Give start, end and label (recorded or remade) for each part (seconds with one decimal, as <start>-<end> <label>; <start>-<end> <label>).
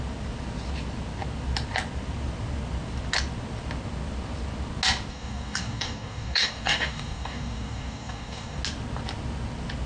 0.0-5.1 recorded; 5.1-8.6 remade; 8.6-9.9 recorded